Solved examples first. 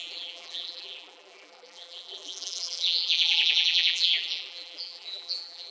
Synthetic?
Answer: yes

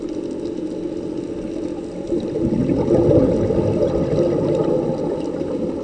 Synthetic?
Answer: no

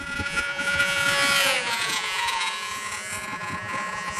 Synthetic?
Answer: yes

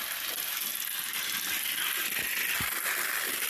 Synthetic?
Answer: no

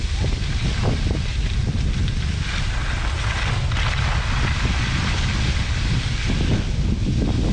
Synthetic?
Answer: no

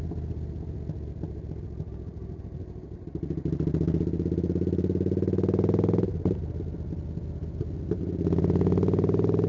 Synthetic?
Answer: no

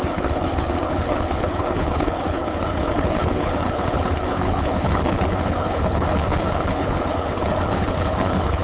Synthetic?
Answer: yes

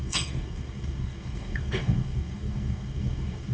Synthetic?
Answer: yes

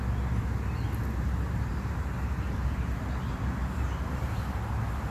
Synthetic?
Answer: no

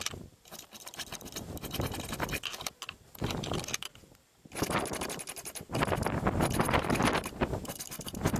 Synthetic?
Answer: no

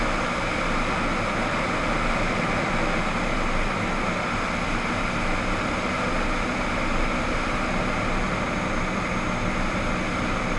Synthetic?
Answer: no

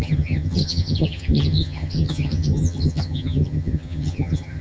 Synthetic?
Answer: yes